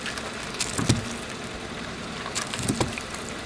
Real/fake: real